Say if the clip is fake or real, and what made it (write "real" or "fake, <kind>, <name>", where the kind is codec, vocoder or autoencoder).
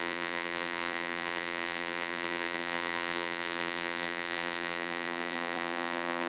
fake, vocoder, BigVGAN v2